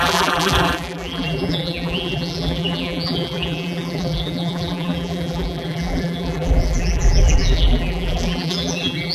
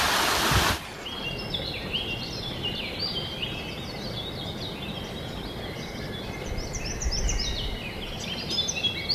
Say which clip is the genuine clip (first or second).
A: second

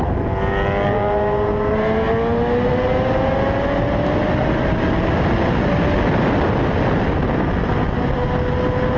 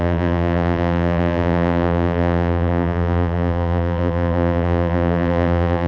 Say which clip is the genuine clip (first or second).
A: first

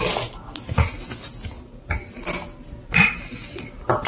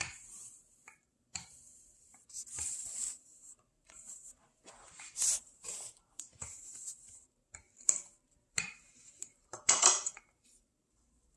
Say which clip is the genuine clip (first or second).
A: first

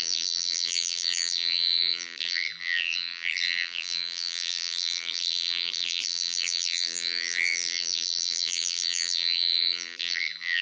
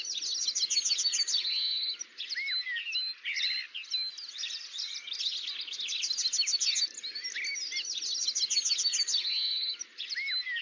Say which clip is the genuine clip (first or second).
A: second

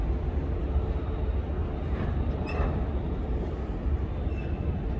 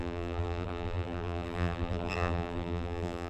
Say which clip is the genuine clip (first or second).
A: first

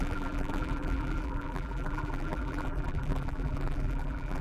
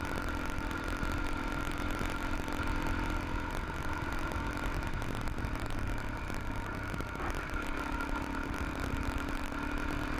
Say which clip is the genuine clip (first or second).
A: second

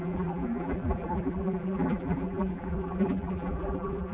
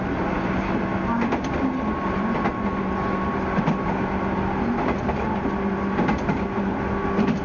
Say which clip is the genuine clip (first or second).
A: second